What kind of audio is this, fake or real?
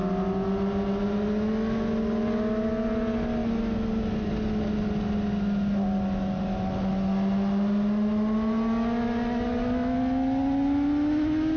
real